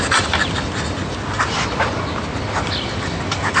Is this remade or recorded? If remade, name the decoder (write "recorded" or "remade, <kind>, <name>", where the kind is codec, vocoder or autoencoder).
recorded